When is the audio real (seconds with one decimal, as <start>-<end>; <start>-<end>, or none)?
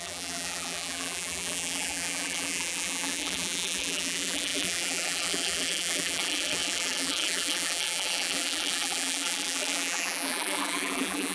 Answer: none